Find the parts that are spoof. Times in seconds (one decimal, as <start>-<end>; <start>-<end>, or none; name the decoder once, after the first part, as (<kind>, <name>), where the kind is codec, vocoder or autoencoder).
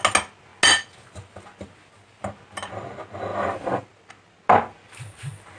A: none